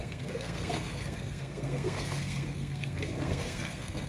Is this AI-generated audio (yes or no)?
yes